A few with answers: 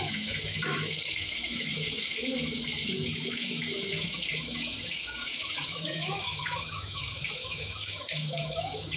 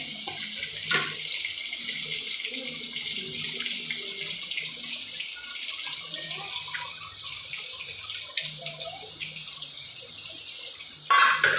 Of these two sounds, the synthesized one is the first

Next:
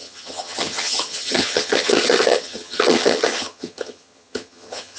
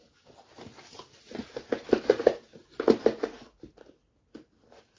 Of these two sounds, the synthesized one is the first